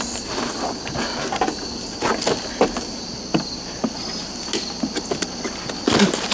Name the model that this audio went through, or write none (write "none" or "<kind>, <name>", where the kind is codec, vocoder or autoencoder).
none